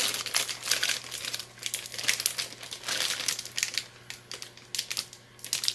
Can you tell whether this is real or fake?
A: real